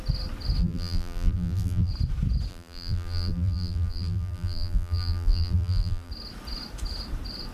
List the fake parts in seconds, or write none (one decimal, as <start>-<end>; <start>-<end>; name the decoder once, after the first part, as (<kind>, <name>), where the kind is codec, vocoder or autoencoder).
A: 0.6-1.9 (vocoder, BigVGAN v2); 2.5-6.1